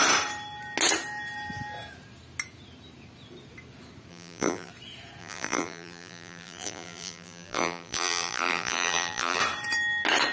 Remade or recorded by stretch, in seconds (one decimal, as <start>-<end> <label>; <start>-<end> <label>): 0.0-4.1 recorded; 4.1-4.7 remade; 4.7-5.2 recorded; 5.2-9.4 remade; 9.4-10.3 recorded